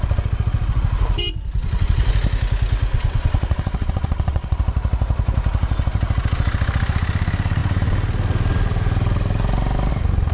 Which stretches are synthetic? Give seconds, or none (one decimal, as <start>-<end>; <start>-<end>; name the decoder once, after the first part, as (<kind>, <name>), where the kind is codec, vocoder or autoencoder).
1.6-2.1 (vocoder, WaveNeXt); 2.9-4.6